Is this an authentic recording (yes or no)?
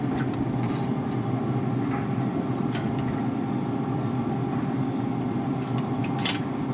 yes